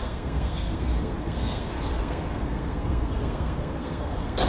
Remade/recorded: remade